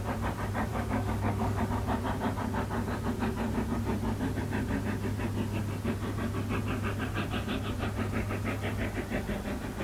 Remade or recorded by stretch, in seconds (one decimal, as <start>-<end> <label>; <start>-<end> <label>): 0.0-0.7 recorded; 0.7-1.6 remade; 1.6-9.8 recorded